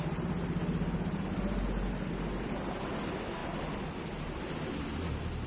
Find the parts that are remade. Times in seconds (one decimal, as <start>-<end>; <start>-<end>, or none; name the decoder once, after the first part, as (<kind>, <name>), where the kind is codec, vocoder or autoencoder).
none